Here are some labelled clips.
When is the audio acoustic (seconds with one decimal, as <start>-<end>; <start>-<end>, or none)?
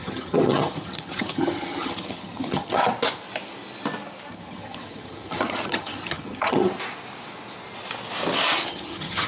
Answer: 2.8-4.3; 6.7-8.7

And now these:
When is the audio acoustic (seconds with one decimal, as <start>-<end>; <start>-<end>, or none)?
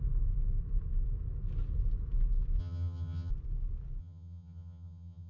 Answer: 0.0-2.6; 3.3-4.0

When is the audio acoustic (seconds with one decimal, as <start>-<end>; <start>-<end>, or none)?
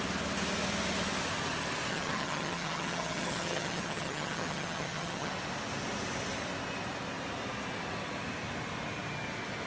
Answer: 0.0-1.9; 5.3-9.7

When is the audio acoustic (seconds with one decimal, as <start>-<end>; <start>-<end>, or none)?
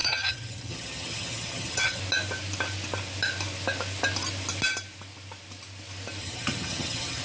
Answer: 2.0-6.2